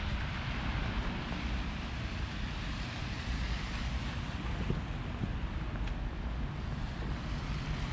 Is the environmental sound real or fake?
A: real